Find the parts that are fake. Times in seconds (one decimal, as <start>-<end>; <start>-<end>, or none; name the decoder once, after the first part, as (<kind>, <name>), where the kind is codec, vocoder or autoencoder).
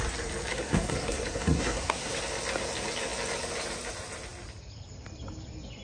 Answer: 0.5-2.2 (codec, SNAC)